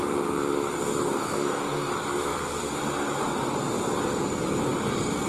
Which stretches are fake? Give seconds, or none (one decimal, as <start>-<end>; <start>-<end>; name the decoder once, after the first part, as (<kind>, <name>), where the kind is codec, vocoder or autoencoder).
1.0-1.9 (codec, DAC)

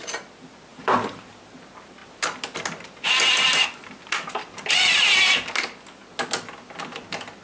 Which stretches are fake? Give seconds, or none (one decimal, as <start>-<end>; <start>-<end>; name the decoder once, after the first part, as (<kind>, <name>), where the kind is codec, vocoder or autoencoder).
0.7-1.3 (vocoder, BigVGAN v2)

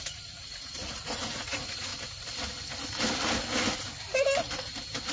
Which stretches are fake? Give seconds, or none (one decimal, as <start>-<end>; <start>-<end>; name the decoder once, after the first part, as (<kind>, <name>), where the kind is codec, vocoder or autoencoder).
0.0-1.9 (vocoder, Vocos)

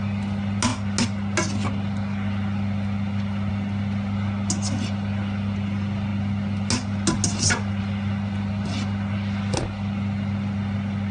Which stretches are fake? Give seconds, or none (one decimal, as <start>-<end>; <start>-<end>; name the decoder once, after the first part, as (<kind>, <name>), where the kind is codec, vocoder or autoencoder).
none

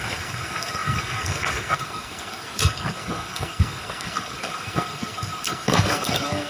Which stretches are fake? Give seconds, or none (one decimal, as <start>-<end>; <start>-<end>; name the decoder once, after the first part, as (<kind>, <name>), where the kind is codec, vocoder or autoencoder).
0.0-6.5 (codec, SNAC)

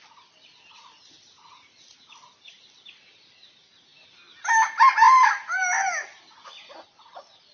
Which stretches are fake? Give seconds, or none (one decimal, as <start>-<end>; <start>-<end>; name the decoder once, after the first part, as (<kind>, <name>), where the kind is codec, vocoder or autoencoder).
none